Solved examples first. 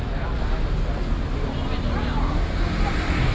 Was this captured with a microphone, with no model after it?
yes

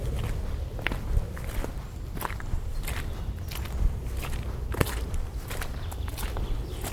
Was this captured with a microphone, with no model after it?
yes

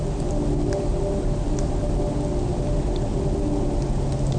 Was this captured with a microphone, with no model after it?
yes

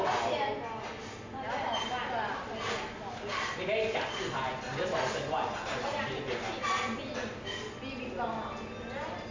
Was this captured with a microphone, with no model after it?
yes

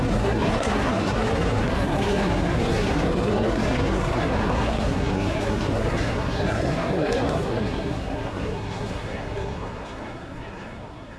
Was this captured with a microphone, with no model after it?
no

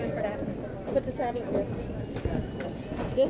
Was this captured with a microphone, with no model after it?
yes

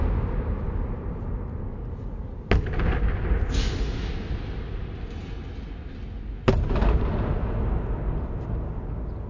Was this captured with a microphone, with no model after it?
yes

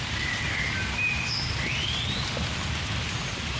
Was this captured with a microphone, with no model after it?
yes